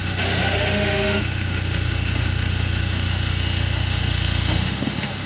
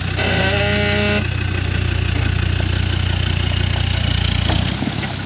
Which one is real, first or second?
second